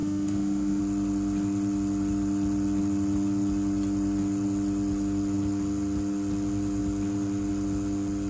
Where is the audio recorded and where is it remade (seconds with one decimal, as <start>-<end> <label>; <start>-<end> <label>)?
0.0-0.8 remade; 0.8-8.3 recorded